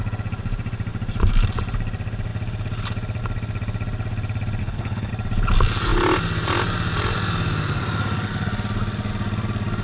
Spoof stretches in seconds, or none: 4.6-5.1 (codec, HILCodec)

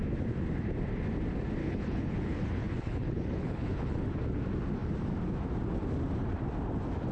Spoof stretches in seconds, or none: 1.6-4.1 (codec, HILCodec)

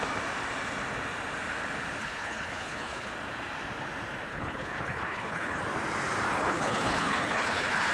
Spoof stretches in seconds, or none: 2.0-3.1 (codec, HILCodec); 4.3-5.6; 6.4-7.9